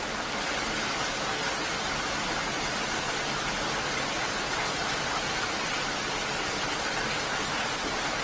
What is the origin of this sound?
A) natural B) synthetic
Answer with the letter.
A